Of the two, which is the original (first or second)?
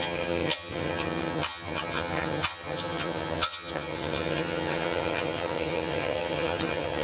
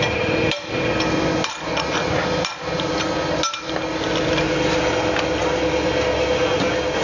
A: second